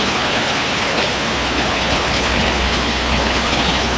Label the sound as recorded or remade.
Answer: remade